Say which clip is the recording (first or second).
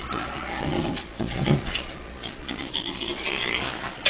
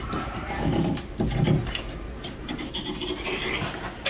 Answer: second